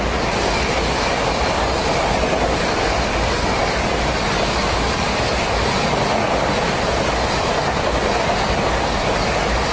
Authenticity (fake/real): real